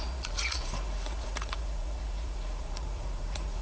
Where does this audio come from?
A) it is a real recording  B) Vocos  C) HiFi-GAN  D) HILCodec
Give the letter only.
B